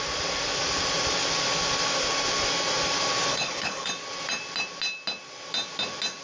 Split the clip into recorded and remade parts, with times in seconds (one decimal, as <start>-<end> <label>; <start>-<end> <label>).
0.0-3.3 recorded; 3.3-3.9 remade; 3.9-6.2 recorded